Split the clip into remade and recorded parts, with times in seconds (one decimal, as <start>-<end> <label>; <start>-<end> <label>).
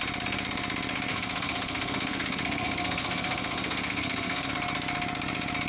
0.0-1.1 recorded; 1.1-4.5 remade; 4.5-5.7 recorded